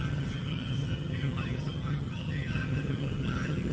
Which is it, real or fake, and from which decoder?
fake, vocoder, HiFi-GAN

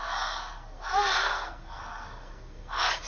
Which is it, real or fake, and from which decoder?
fake, codec, SNAC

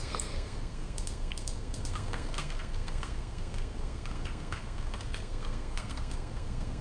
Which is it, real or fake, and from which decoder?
fake, codec, SNAC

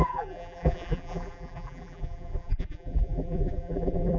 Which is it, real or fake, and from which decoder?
fake, vocoder, BigVGAN v2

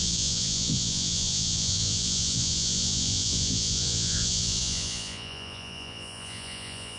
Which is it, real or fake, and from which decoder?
fake, vocoder, Vocos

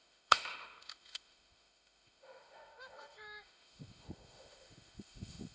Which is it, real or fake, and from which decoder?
fake, autoencoder, DAC-VAE